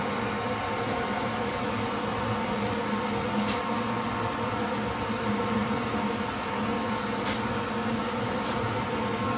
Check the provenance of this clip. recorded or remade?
recorded